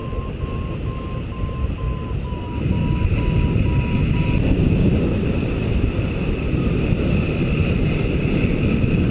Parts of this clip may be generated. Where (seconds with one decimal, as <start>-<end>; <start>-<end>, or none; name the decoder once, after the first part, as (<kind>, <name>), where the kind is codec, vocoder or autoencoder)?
none

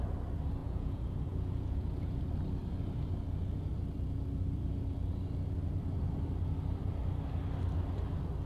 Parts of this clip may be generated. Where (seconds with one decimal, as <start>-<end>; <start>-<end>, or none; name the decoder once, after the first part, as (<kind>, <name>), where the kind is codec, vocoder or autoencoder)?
0.6-2.1 (vocoder, Vocos)

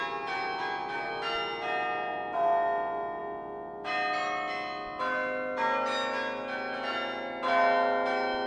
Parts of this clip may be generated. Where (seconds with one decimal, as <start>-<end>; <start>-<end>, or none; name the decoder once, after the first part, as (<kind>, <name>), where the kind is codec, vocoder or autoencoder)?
none

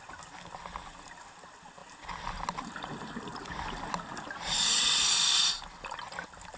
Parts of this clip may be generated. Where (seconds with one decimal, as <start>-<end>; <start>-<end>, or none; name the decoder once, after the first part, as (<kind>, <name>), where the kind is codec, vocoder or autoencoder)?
none

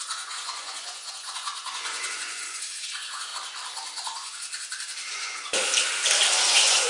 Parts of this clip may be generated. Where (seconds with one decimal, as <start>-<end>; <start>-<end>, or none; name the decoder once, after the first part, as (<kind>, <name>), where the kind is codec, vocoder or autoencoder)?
0.0-3.3 (vocoder, Vocos); 5.1-5.6; 6.3-6.9

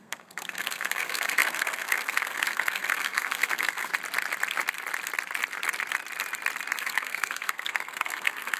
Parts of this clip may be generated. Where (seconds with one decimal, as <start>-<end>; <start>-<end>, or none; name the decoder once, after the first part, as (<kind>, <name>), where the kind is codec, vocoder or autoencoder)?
0.0-3.9 (codec, SNAC); 6.8-8.6

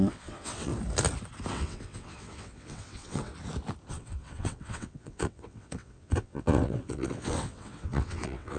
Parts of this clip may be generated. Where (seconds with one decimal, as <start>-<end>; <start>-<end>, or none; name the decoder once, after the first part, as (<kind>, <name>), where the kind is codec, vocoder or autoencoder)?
0.0-0.7 (vocoder, WaveNeXt); 1.5-3.3; 3.9-8.6